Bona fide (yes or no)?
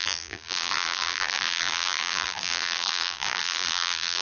no